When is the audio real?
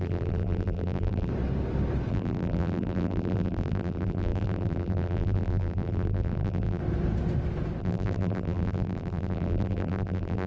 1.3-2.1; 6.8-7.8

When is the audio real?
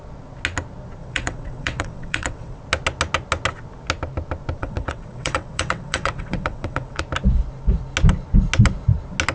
0.0-1.0; 2.6-4.6; 7.0-9.3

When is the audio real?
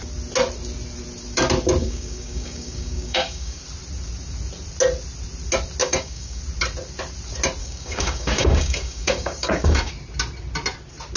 0.0-1.8; 3.6-5.8; 6.4-7.6; 9.9-11.2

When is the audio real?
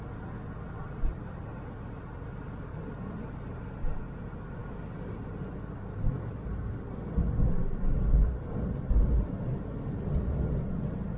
0.0-11.2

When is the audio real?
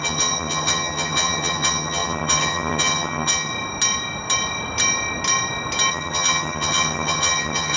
3.5-5.9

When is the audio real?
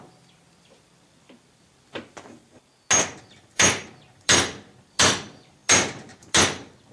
2.4-3.2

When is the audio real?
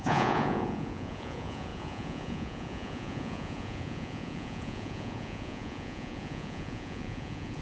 none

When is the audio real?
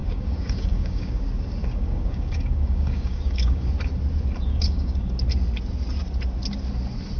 1.2-1.6; 3.7-4.5; 5.1-7.2